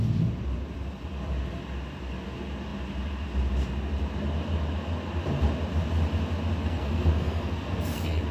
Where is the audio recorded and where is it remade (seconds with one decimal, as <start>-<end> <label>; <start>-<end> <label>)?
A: 0.0-6.6 recorded; 6.6-8.3 remade